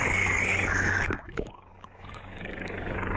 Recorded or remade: remade